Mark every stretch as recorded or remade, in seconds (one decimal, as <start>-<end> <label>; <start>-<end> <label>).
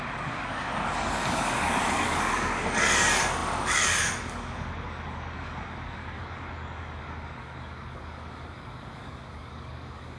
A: 0.0-10.2 remade